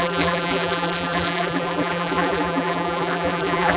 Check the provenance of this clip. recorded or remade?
remade